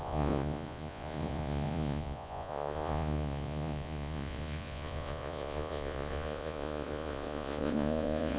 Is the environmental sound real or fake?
fake